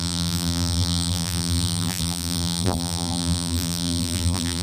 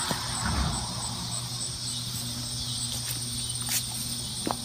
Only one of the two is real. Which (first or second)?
second